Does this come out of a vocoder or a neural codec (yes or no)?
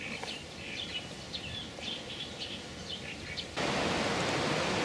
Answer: no